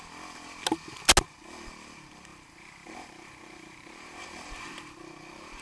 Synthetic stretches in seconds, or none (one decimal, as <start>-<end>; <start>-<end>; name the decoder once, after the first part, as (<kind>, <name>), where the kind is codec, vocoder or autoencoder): 2.3-5.1 (vocoder, BigVGAN v2)